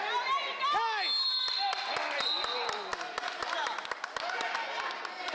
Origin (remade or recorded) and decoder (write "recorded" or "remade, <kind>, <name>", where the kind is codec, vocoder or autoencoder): recorded